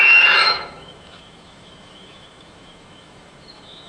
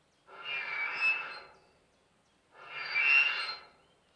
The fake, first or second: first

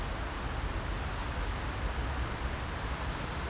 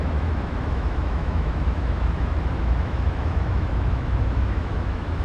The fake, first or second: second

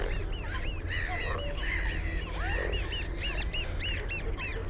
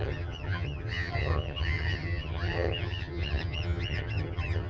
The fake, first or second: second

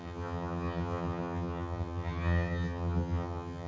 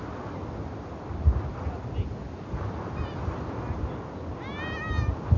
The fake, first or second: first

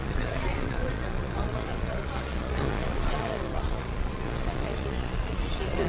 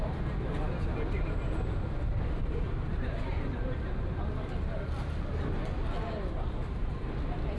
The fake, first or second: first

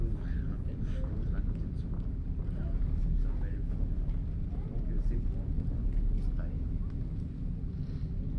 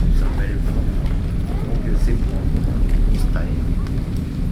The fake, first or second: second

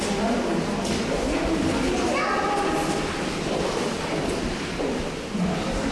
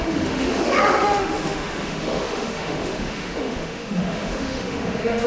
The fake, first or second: second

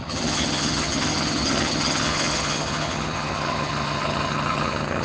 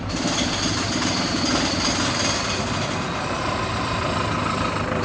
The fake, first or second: first